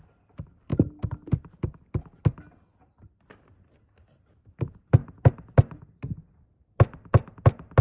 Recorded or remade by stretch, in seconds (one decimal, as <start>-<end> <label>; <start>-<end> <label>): 0.0-7.8 recorded